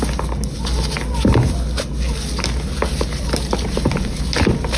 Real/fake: real